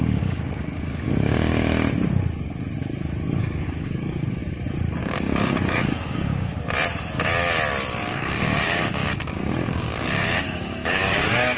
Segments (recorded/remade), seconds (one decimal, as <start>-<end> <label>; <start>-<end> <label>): 0.0-1.5 remade; 1.5-3.4 recorded; 3.4-4.4 remade; 4.4-5.0 recorded; 5.0-6.5 remade; 6.5-8.0 recorded; 8.0-11.6 remade